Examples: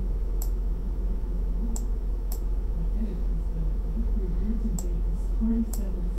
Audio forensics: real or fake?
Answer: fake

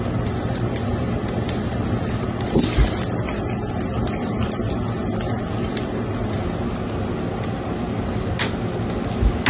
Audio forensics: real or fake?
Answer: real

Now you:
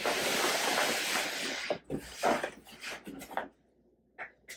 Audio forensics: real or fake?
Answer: real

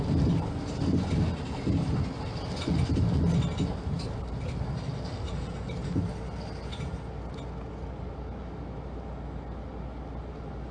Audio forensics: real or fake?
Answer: real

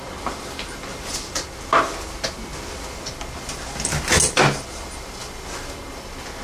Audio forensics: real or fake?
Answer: real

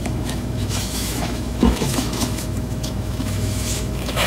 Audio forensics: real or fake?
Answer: fake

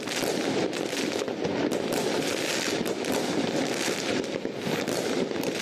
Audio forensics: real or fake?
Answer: real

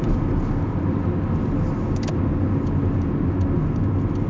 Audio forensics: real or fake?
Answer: real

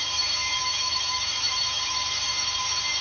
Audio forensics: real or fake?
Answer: fake